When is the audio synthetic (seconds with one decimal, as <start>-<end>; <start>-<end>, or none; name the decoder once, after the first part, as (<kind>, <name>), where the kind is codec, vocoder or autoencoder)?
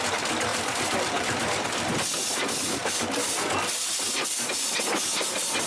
0.5-1.9 (vocoder, BigVGAN v2)